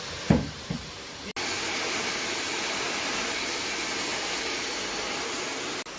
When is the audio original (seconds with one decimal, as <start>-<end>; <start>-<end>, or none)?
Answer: 0.0-6.0